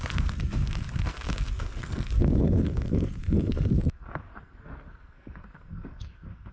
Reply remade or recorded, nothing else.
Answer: remade